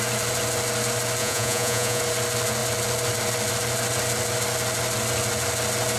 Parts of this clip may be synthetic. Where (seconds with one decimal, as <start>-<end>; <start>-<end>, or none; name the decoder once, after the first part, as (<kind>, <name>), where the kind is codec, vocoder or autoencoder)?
1.2-2.0 (vocoder, Vocos)